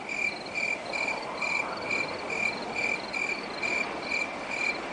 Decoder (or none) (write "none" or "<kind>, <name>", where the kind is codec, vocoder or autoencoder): none